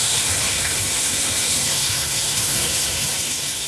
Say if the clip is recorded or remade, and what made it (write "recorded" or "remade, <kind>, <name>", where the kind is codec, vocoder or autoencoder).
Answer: remade, codec, SNAC